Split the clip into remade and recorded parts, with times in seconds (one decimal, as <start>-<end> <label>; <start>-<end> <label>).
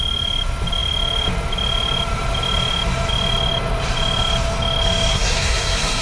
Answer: 0.0-5.1 recorded; 5.1-6.0 remade